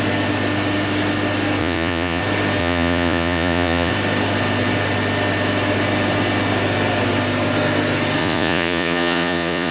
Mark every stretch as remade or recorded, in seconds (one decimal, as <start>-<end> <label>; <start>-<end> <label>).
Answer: 0.0-1.6 recorded; 1.6-2.2 remade; 2.2-2.6 recorded; 2.6-3.9 remade; 3.9-8.2 recorded; 8.2-9.7 remade